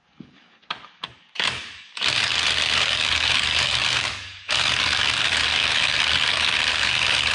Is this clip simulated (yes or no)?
yes